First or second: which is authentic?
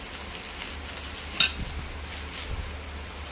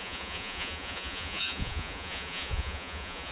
first